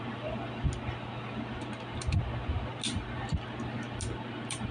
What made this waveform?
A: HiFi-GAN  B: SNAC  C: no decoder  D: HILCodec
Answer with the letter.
C